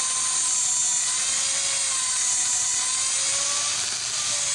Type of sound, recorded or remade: recorded